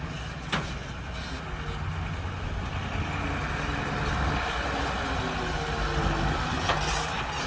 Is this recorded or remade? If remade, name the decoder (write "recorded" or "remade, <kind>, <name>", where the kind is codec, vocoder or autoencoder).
recorded